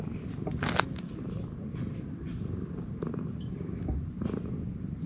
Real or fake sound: real